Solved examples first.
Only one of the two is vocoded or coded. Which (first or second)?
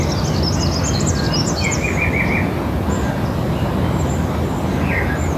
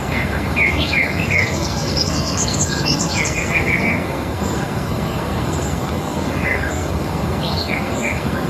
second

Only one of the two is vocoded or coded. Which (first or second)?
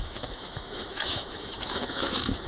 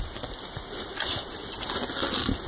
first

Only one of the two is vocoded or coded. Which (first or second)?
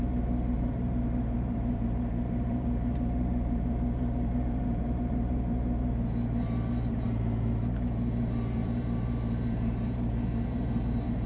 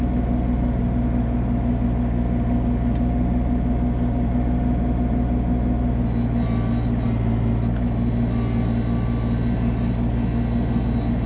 first